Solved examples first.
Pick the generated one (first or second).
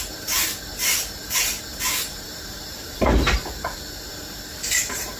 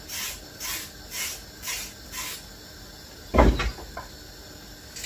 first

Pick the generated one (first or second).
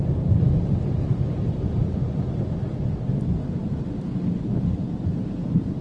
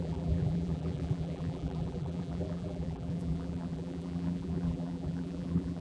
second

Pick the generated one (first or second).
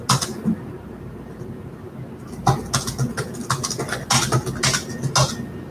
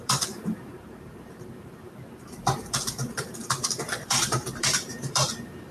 second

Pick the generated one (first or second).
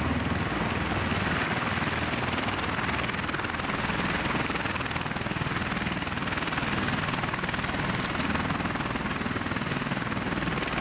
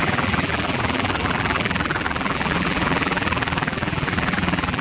second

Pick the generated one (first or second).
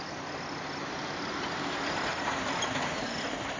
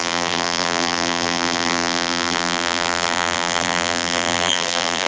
second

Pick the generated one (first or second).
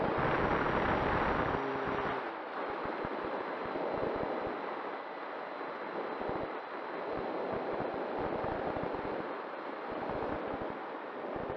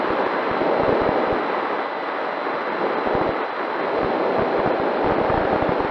first